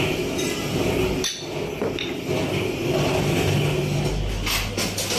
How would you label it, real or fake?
real